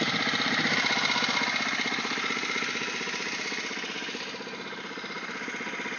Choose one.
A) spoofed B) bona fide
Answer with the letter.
B